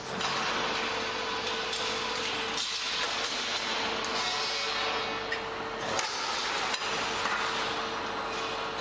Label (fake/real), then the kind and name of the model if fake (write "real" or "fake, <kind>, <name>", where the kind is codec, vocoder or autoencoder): real